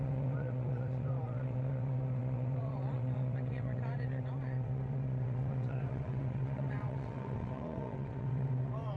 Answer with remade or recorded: remade